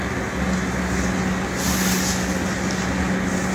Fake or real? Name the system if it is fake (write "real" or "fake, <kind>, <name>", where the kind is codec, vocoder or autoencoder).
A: real